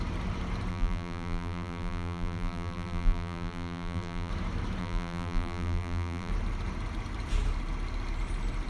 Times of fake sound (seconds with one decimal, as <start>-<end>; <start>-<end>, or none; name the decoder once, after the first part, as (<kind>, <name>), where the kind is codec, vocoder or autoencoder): 0.7-4.3 (vocoder, BigVGAN v2); 4.8-6.3